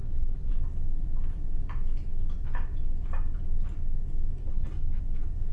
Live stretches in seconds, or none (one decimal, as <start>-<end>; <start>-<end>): 0.5-4.4; 5.0-5.5